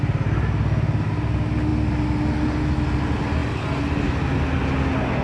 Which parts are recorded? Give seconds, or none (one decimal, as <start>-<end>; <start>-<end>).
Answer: 0.0-5.2